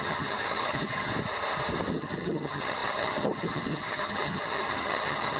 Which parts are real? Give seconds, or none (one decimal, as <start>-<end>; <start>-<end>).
1.1-1.9